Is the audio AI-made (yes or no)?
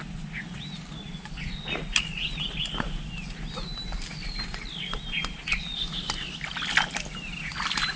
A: no